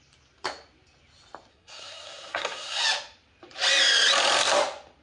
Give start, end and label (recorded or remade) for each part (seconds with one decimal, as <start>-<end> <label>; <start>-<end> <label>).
0.0-1.5 recorded; 1.5-2.8 remade; 2.8-5.0 recorded